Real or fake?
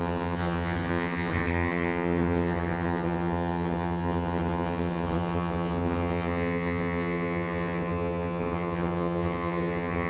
fake